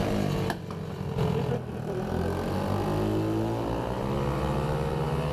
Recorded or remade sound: recorded